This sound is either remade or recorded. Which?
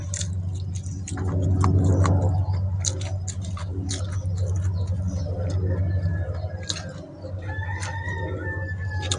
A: recorded